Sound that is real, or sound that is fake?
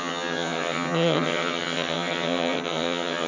fake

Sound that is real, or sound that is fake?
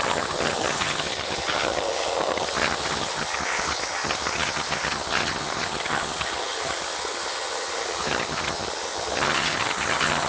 fake